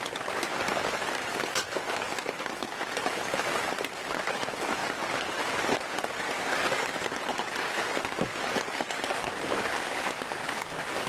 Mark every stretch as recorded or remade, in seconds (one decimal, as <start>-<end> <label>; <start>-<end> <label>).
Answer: 0.0-11.1 remade